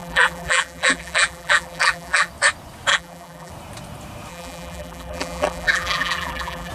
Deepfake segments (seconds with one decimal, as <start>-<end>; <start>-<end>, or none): 0.0-2.3; 2.9-3.5; 4.3-6.7

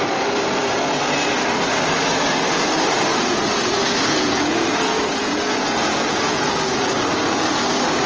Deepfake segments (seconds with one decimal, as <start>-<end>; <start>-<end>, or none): 3.1-7.6

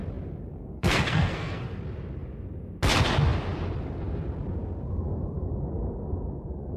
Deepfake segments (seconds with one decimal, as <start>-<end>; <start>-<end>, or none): 0.5-1.8

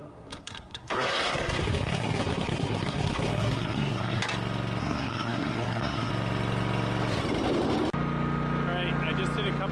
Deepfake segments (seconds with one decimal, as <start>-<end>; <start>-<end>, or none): 0.0-4.2; 4.8-6.1

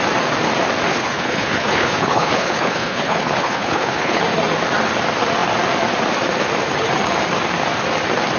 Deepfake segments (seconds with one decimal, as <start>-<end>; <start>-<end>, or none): 0.9-4.2

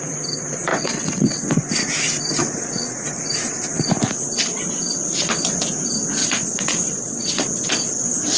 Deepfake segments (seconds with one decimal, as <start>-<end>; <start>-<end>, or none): 0.7-1.7; 2.4-3.2; 6.2-7.5

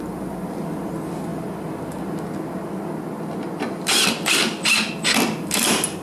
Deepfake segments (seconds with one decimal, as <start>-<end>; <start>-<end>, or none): none